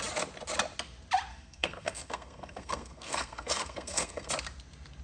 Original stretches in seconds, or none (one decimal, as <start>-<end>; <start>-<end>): 0.0-1.3; 4.3-5.0